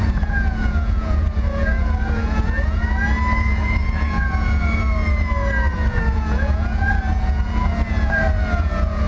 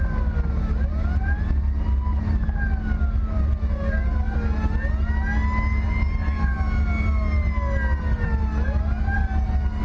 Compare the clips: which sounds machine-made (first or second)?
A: first